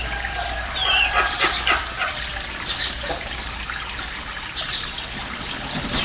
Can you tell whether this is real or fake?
fake